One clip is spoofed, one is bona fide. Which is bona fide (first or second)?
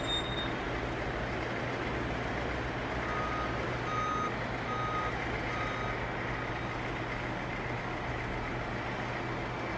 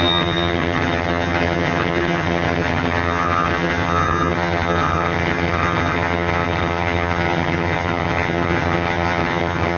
first